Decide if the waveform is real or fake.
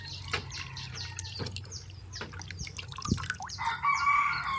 real